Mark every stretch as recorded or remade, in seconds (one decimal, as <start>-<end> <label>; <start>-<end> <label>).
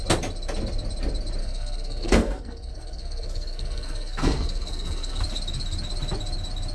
0.0-1.4 recorded; 1.4-5.2 remade; 5.2-6.7 recorded